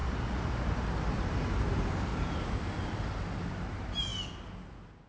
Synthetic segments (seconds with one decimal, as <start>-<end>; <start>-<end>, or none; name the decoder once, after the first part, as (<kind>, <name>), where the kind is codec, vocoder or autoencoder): 1.6-2.1 (vocoder, BigVGAN v2); 3.5-4.1